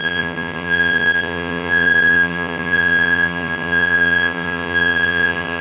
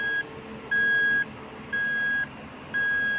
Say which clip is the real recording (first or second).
second